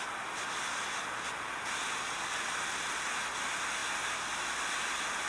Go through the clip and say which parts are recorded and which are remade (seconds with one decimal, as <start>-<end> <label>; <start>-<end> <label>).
0.0-5.3 recorded